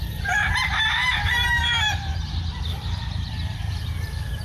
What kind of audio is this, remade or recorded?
remade